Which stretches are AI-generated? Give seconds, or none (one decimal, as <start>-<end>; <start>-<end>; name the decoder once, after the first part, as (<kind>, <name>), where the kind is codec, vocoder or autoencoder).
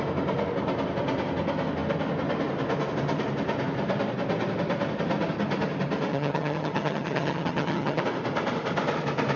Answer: 6.1-8.0 (vocoder, HiFi-GAN)